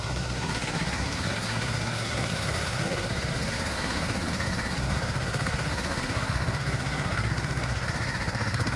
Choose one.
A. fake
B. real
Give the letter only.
A